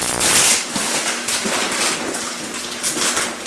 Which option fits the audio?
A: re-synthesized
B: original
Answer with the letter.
B